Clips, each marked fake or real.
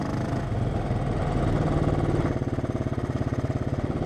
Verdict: real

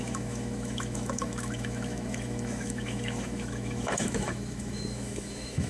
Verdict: fake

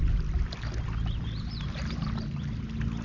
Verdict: real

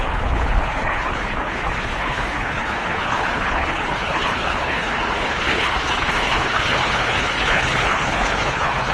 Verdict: fake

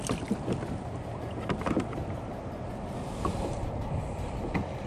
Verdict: real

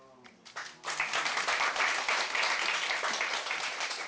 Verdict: real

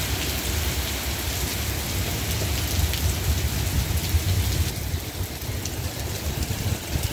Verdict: real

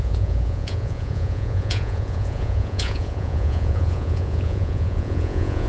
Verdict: fake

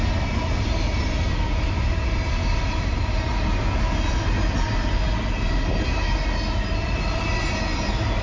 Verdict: real